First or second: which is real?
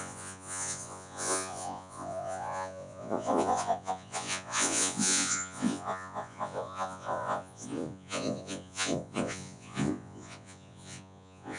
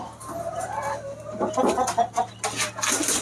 second